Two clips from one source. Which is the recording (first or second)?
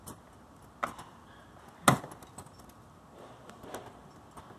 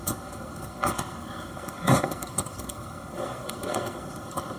first